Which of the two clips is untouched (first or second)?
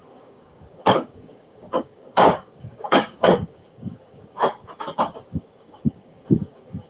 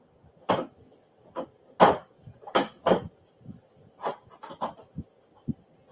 second